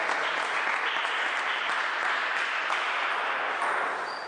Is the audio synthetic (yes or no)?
no